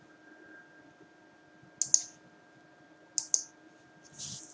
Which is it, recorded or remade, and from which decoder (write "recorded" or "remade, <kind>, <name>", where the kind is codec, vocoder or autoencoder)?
recorded